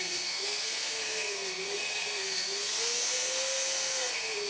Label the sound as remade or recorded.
remade